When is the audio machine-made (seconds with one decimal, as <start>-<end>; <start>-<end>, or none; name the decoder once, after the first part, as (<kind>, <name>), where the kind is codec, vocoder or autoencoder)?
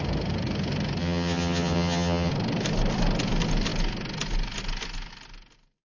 1.0-2.3 (vocoder, HiFi-GAN)